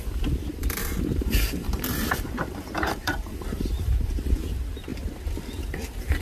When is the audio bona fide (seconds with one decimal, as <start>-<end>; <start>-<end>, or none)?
0.0-0.5; 4.1-6.2